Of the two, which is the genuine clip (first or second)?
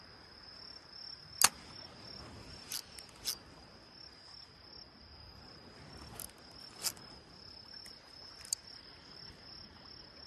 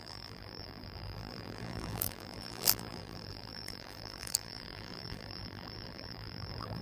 first